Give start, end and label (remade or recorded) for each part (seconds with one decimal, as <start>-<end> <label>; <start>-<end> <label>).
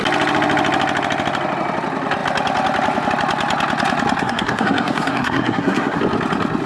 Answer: 0.0-4.2 recorded; 4.2-6.0 remade; 6.0-6.7 recorded